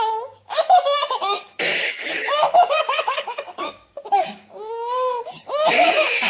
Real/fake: fake